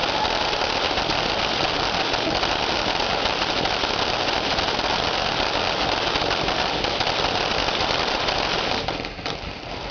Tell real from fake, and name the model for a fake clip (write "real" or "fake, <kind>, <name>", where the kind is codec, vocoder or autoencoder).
real